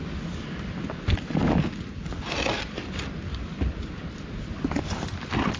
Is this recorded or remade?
recorded